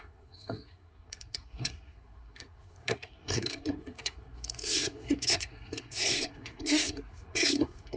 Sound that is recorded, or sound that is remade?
remade